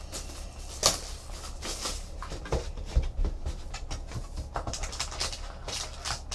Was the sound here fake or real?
real